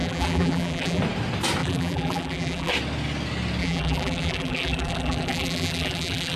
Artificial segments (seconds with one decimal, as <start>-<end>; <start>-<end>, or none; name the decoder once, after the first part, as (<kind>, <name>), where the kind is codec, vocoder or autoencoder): 0.0-1.0 (vocoder, BigVGAN v2); 1.6-2.7; 3.6-6.4